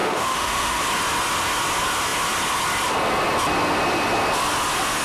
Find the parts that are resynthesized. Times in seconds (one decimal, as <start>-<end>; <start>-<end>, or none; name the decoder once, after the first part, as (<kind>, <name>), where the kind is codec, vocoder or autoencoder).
0.0-0.8 (autoencoder, DAC-VAE)